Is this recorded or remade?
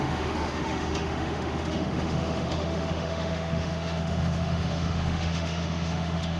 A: remade